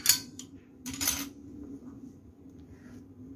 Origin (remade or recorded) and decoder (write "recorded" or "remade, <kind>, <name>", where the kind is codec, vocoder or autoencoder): recorded